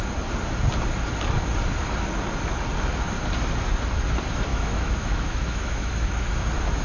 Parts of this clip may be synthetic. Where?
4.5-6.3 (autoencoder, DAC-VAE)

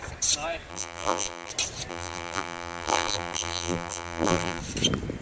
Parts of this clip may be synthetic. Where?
0.7-1.5 (vocoder, BigVGAN v2); 1.9-4.6